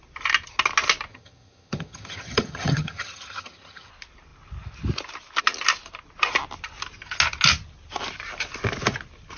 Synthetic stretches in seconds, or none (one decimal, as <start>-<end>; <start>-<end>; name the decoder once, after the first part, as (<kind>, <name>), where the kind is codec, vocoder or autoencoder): 1.1-3.9 (vocoder, HiFi-GAN)